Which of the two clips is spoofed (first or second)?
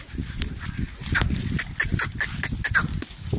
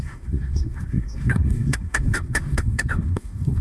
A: second